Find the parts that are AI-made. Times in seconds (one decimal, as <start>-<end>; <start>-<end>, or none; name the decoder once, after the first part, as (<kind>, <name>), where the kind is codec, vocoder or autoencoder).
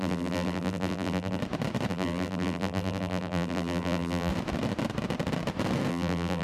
0.0-1.4 (vocoder, BigVGAN v2); 1.9-4.3; 5.9-6.4